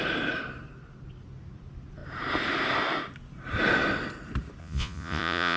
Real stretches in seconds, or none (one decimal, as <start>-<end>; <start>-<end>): 0.0-4.6